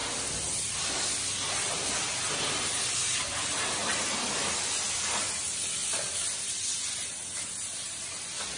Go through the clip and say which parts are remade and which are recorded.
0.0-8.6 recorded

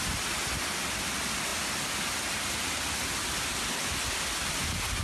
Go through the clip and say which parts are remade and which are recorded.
0.0-5.0 recorded

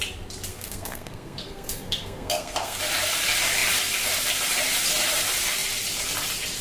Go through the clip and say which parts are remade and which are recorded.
0.0-0.5 recorded; 0.5-2.8 remade; 2.8-6.6 recorded

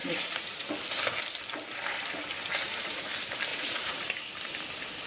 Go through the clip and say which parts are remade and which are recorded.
0.0-0.7 remade; 0.7-2.6 recorded; 2.6-3.1 remade; 3.1-3.5 recorded; 3.5-4.0 remade; 4.0-5.1 recorded

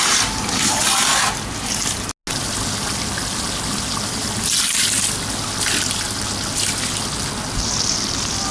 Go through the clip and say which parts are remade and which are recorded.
0.0-8.5 recorded

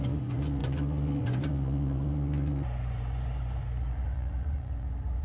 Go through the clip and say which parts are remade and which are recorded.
0.0-5.2 remade

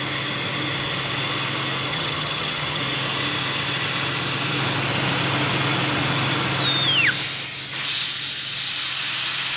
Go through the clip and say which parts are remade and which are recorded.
0.0-1.9 recorded; 1.9-2.8 remade; 2.8-9.6 recorded